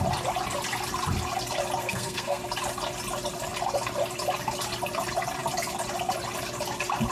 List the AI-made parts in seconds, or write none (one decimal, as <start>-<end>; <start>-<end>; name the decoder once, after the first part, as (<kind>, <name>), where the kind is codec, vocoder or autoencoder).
1.8-2.4 (codec, SNAC)

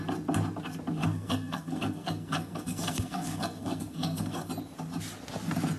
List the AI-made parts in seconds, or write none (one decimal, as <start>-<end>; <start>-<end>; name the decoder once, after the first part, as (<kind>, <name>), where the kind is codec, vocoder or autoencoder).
1.0-4.5 (codec, SNAC)

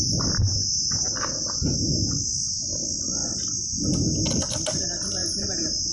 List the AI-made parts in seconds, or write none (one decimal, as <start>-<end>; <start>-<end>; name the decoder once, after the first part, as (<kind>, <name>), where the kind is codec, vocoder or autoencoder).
none